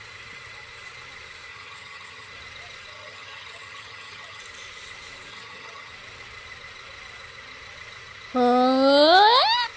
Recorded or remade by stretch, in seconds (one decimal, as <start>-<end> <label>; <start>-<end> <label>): 0.0-1.5 recorded; 1.5-2.3 remade; 2.3-2.9 recorded; 2.9-4.4 remade; 4.4-5.3 recorded; 5.3-5.9 remade; 5.9-9.8 recorded